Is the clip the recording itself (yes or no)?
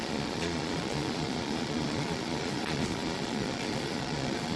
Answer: no